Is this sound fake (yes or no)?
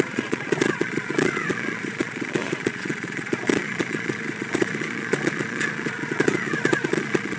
yes